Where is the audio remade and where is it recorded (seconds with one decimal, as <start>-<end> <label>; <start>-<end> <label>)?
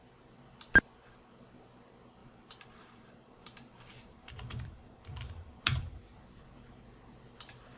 0.0-2.2 recorded; 2.2-6.0 remade; 6.0-7.8 recorded